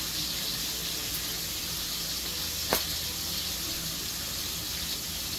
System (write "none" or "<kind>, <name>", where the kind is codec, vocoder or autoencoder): none